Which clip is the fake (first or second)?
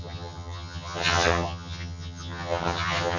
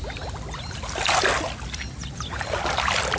first